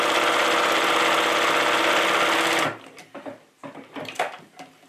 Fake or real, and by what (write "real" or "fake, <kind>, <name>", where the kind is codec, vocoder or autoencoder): real